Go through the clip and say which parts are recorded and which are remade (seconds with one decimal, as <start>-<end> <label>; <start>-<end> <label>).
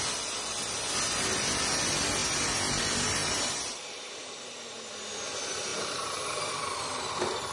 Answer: 0.0-3.2 recorded; 3.2-4.2 remade; 4.2-5.7 recorded; 5.7-7.1 remade; 7.1-7.5 recorded